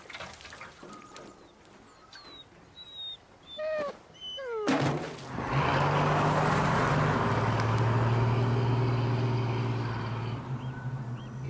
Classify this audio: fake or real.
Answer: real